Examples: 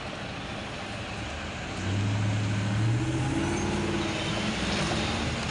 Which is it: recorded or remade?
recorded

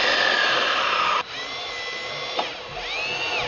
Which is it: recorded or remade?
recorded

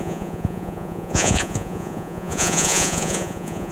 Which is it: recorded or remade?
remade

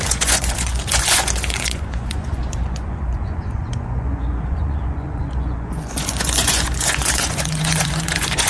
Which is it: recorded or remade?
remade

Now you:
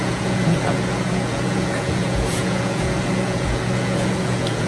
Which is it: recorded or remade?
remade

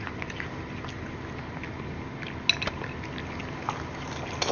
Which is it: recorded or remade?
recorded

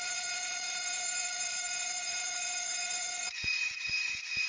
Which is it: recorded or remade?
remade